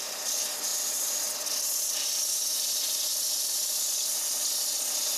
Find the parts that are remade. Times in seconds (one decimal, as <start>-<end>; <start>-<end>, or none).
none